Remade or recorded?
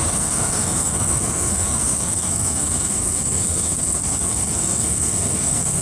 remade